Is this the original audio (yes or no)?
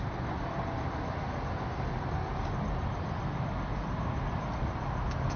yes